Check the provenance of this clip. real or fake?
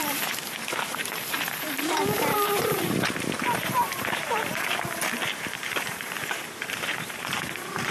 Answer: fake